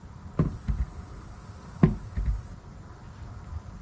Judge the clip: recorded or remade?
recorded